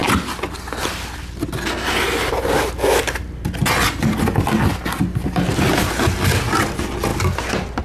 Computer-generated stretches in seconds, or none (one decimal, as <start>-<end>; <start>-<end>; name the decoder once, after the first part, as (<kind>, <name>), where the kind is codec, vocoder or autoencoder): none